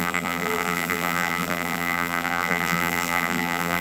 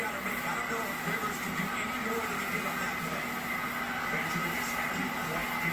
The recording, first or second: second